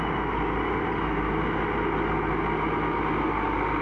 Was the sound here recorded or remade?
recorded